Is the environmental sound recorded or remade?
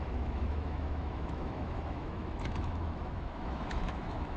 remade